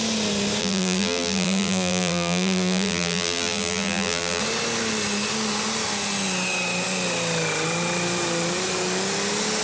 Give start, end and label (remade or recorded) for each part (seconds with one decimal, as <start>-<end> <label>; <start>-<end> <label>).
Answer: 0.0-0.6 recorded; 0.6-4.4 remade; 4.4-9.6 recorded